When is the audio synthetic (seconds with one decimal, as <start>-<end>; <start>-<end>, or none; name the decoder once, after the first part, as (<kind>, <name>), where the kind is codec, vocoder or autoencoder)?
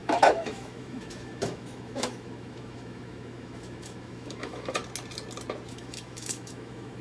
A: 0.0-4.8 (autoencoder, DAC-VAE); 5.7-7.0